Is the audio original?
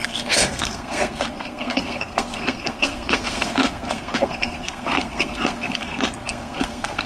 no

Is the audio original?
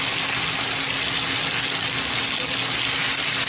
yes